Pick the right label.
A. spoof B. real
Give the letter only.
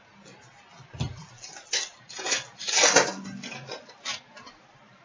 B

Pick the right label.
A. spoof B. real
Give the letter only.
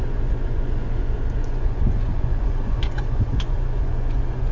A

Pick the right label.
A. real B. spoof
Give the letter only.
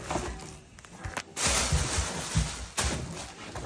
A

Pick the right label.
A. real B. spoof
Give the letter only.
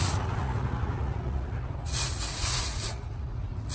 B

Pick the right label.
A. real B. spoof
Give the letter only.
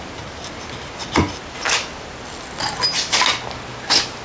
A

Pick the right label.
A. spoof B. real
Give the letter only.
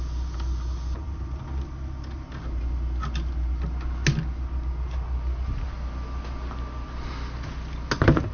B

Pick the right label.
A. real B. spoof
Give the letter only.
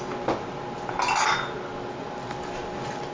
A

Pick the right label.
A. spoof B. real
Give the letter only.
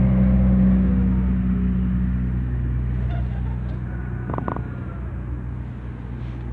B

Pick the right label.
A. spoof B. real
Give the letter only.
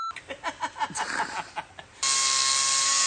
B